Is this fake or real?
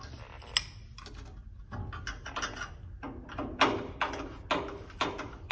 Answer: real